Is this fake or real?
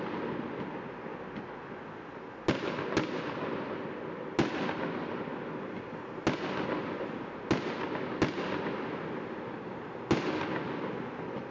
real